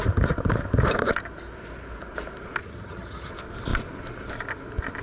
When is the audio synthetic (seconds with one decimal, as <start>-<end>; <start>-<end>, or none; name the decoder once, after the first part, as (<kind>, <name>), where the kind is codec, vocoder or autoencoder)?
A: 2.6-3.3 (vocoder, HiFi-GAN)